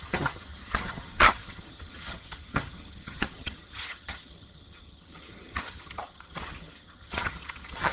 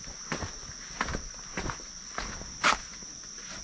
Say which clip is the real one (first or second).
second